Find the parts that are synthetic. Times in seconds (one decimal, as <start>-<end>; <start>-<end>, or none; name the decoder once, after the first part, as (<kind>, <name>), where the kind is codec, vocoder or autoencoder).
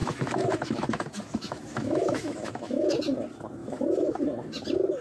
0.0-3.0 (autoencoder, DAC-VAE); 3.6-4.2